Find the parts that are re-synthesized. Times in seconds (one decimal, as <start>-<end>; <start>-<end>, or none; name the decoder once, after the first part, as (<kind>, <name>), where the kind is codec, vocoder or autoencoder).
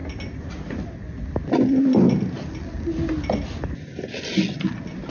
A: none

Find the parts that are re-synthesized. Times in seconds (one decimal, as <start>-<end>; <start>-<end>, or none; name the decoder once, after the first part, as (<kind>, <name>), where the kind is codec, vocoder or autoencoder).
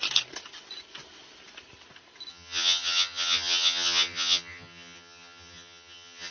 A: 2.3-6.3 (vocoder, HiFi-GAN)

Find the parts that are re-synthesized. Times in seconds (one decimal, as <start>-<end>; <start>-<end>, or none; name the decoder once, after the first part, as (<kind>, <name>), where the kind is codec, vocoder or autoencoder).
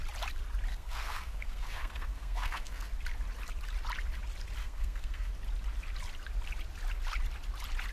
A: 0.7-2.9 (codec, SNAC); 4.6-5.3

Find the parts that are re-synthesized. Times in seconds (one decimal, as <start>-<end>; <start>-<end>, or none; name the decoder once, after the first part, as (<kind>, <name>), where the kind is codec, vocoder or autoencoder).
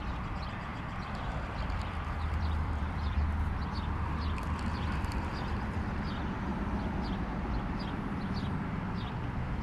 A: 0.7-3.2 (vocoder, BigVGAN v2); 6.5-7.3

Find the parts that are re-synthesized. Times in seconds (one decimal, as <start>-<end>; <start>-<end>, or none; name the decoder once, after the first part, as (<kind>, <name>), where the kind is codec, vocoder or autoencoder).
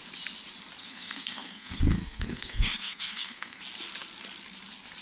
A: 0.8-3.6 (codec, SNAC)